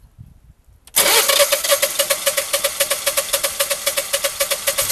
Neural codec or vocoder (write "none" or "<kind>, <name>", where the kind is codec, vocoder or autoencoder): none